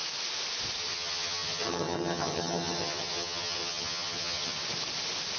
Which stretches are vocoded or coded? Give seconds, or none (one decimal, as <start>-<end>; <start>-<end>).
0.8-4.6